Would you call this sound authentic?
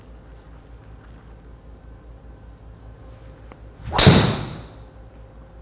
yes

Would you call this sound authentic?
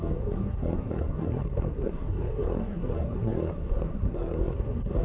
no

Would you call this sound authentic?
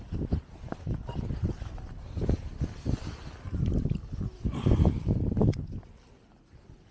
yes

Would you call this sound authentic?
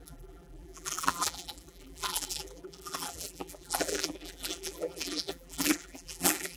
no